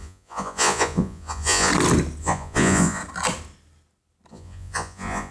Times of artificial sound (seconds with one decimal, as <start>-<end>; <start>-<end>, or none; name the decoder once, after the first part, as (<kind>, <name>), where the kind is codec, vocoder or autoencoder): 0.0-1.7 (vocoder, Vocos); 2.2-3.0; 4.3-5.3